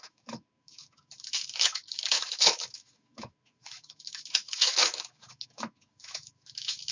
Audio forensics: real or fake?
fake